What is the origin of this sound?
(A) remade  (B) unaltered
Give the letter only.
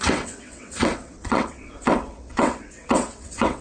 A